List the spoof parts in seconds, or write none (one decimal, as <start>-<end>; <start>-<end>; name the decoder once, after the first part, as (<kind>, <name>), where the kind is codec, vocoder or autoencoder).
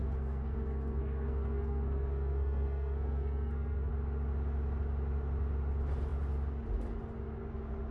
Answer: 0.0-3.9 (codec, SNAC)